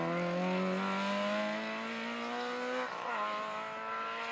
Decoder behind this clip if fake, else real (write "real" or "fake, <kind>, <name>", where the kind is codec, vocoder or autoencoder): real